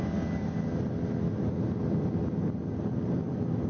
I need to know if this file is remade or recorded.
recorded